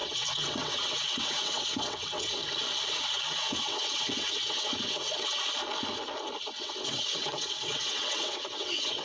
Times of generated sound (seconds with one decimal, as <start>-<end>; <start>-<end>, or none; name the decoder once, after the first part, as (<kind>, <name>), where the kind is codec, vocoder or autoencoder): 0.0-2.4 (vocoder, WaveNeXt); 3.3-5.4; 6.5-9.0